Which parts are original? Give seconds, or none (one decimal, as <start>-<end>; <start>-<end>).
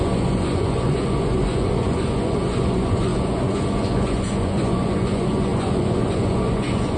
none